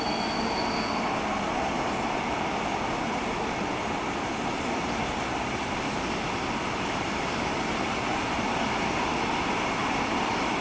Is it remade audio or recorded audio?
recorded